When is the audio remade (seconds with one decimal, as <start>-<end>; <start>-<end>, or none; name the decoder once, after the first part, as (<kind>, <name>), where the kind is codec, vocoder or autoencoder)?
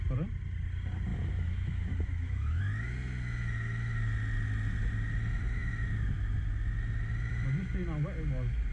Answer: 1.1-2.6 (autoencoder, DAC-VAE)